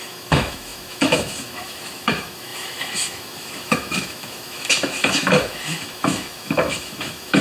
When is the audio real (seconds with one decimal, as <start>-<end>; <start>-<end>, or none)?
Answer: none